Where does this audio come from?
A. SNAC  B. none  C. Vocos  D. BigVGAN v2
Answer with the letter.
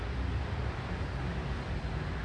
B